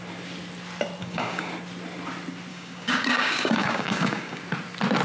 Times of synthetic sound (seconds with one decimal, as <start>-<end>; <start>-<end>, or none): 1.0-1.5; 2.5-4.4